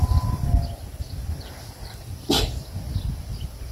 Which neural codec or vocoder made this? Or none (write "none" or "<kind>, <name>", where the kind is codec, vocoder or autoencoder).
vocoder, BigVGAN v2